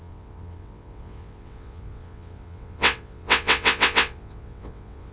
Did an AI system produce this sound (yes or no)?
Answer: yes